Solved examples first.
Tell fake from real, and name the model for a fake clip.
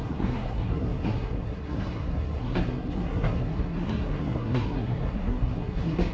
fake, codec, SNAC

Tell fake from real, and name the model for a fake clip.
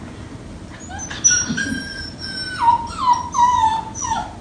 real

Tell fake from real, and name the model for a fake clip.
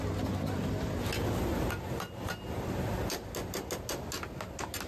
real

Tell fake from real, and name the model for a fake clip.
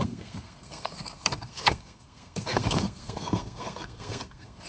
fake, codec, SNAC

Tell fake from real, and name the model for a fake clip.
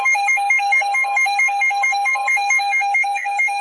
fake, codec, SNAC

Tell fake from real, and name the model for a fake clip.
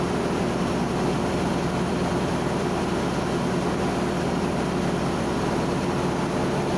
real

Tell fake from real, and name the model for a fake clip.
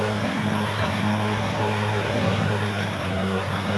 fake, codec, SNAC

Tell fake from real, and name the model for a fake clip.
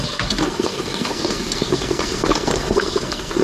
fake, codec, SNAC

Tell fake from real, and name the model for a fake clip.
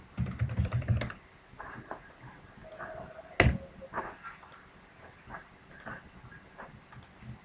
real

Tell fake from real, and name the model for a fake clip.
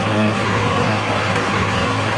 fake, codec, SNAC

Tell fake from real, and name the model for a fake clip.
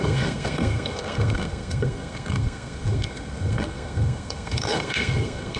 fake, codec, SNAC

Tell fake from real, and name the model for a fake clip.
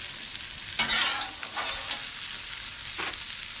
real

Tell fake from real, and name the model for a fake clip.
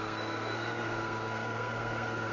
fake, codec, SNAC